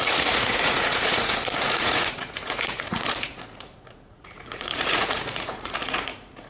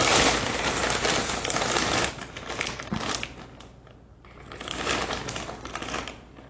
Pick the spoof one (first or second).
first